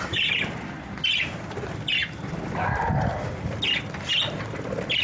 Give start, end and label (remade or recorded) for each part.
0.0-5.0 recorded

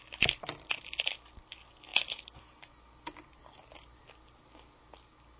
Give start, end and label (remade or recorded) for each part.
0.0-5.4 recorded